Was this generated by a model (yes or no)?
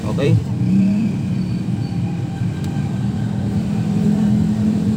yes